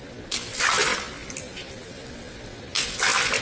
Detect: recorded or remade recorded